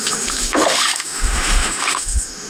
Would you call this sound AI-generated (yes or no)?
yes